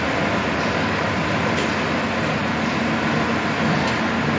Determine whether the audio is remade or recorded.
recorded